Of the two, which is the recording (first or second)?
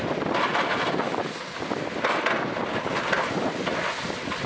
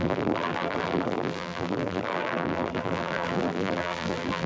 first